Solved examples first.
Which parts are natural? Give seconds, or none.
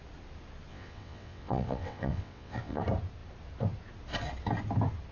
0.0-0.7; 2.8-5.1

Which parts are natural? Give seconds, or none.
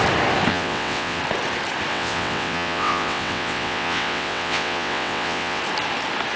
0.0-0.5; 1.2-1.9; 5.6-6.4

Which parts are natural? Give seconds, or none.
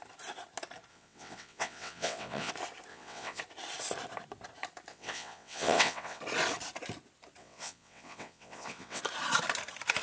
0.0-0.9; 2.5-2.9; 3.4-4.9; 6.2-7.4; 9.0-10.0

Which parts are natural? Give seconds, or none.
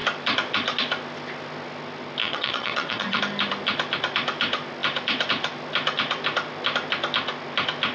0.0-2.2; 3.2-7.9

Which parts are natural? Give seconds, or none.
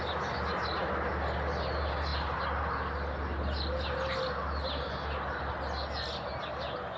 0.0-7.0